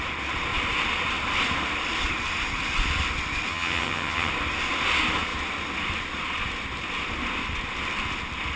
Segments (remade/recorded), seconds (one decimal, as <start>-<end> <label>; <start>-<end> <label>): 0.0-3.5 recorded; 3.5-4.3 remade; 4.3-8.6 recorded